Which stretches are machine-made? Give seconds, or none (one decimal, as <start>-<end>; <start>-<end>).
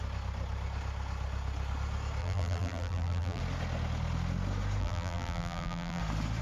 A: 2.2-3.4; 4.8-6.0